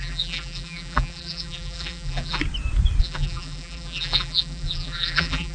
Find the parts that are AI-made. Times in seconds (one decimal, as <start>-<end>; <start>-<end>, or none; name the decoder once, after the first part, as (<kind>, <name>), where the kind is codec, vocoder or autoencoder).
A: 0.0-2.4 (vocoder, BigVGAN v2); 3.0-5.5